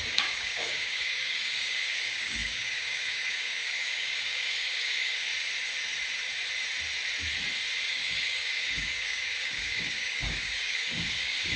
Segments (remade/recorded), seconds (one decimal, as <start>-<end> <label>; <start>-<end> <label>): 0.0-5.3 remade; 5.3-7.9 recorded; 7.9-11.6 remade